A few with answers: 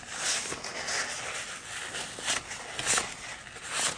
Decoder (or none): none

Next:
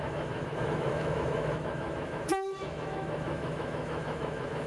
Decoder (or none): autoencoder, DAC-VAE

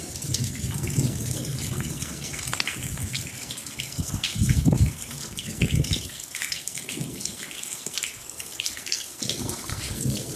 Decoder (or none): codec, SNAC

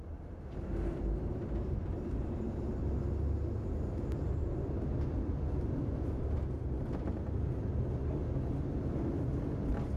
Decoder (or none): none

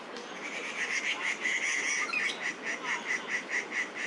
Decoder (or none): none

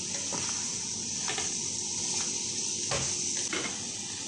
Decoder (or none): none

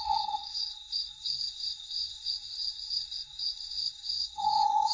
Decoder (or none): codec, SNAC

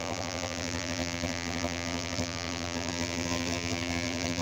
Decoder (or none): vocoder, BigVGAN v2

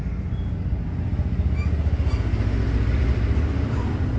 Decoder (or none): none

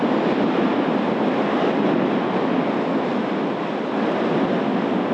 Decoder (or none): none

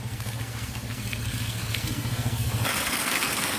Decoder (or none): codec, SNAC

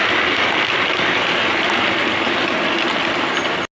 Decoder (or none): none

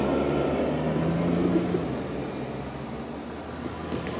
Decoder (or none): none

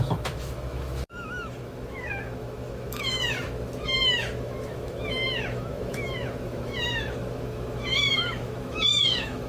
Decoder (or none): autoencoder, DAC-VAE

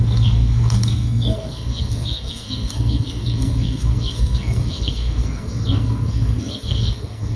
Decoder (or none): codec, SNAC